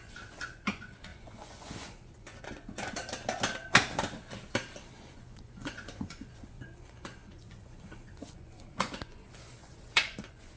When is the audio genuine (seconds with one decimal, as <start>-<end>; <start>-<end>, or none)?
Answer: 3.0-4.9

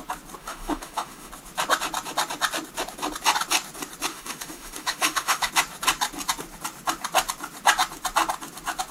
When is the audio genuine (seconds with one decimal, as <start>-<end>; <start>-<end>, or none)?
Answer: 0.0-0.4; 1.3-4.1; 5.5-8.9